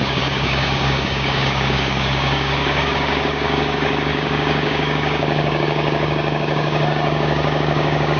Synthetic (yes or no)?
yes